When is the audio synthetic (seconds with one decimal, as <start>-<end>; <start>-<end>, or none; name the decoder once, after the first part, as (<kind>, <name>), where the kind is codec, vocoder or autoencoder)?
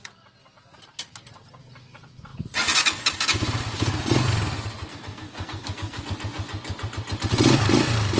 4.9-6.0 (codec, SNAC)